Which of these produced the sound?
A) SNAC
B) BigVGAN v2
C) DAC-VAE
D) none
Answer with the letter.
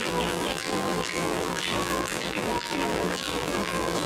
B